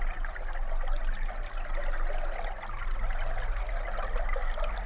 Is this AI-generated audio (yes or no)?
no